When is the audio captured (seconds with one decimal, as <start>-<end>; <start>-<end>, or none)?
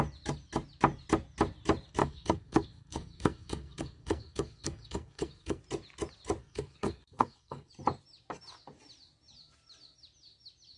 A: 0.0-2.0; 5.6-6.4; 7.7-10.8